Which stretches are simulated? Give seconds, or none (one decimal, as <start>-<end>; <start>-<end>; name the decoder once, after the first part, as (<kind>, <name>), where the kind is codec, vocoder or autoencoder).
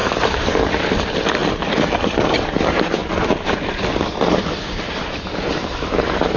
0.0-1.4 (vocoder, BigVGAN v2); 2.0-6.4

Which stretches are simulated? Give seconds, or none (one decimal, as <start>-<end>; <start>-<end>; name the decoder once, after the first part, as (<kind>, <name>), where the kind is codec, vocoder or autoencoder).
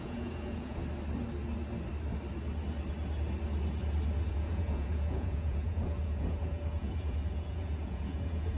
0.0-0.8 (vocoder, Vocos); 4.3-8.6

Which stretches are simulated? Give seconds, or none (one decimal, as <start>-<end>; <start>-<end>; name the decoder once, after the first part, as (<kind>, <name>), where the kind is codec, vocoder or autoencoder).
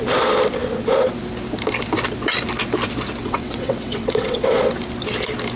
3.2-4.6 (vocoder, WaveNeXt)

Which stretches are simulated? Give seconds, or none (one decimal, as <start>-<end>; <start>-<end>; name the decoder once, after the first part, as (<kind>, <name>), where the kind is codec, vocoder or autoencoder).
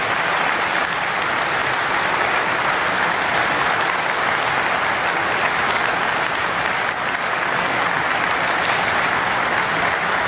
7.3-7.8 (codec, DAC)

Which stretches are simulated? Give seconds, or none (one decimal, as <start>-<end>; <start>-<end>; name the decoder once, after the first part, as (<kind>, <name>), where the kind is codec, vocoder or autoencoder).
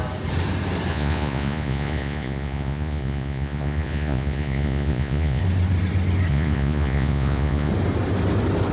0.9-5.4 (vocoder, Vocos); 6.3-7.7